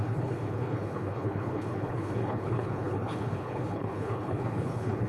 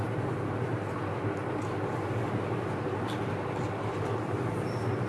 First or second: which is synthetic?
first